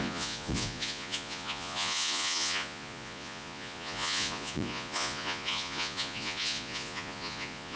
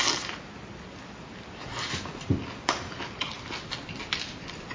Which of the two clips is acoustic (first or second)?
second